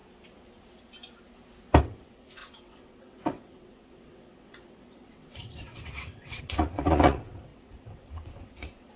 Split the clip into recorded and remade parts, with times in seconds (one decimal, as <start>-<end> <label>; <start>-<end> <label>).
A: 0.0-1.8 recorded; 1.8-9.0 remade